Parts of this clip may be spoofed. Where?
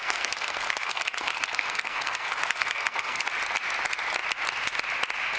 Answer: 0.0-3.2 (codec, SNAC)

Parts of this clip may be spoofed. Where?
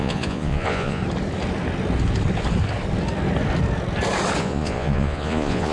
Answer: 0.0-1.0 (vocoder, Vocos); 4.4-5.7